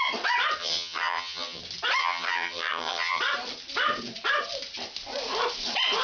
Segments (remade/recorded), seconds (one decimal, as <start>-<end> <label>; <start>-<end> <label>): 0.0-0.6 recorded; 0.6-1.6 remade; 1.6-2.0 recorded; 2.0-3.2 remade; 3.2-6.0 recorded